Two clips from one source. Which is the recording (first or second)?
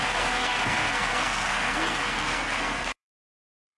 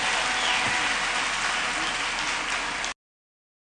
second